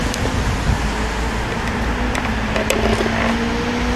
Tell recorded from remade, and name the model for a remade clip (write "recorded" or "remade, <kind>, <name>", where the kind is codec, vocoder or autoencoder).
recorded